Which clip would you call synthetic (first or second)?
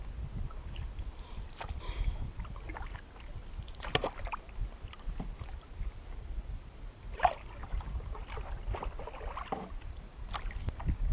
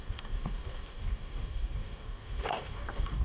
second